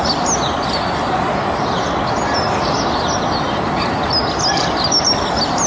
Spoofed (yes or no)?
no